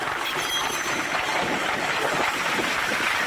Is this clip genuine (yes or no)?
yes